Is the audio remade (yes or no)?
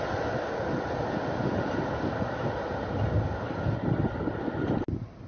no